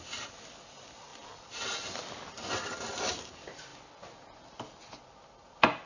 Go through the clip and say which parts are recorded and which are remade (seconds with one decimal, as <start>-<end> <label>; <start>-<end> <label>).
0.0-5.9 recorded